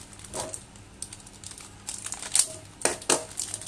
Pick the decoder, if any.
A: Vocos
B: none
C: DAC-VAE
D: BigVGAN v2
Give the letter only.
B